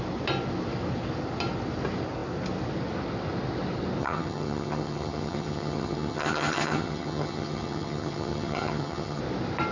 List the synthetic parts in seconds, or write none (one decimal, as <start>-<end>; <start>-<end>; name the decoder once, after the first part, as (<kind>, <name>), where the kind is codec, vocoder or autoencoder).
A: 4.0-9.2 (vocoder, HiFi-GAN)